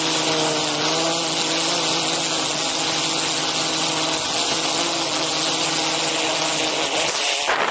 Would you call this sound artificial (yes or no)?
no